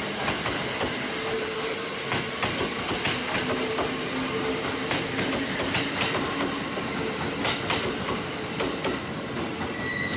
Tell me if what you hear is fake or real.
real